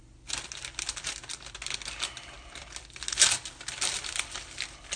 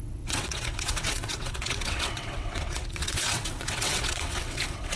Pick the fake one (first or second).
second